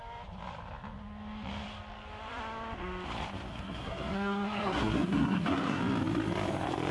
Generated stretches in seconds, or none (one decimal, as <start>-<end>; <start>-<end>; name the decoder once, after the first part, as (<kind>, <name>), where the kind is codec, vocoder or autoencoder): 3.5-5.8 (codec, SNAC)